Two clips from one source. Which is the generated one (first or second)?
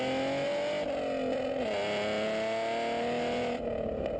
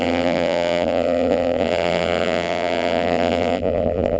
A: second